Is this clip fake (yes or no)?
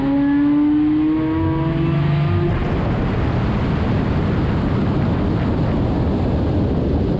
no